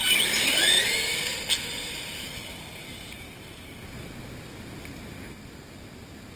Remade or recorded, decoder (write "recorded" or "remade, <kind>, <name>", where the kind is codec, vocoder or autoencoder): recorded